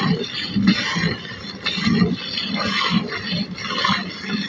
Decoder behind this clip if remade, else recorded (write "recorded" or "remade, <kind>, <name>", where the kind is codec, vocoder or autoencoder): recorded